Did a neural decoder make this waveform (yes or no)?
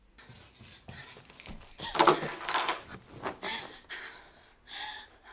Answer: no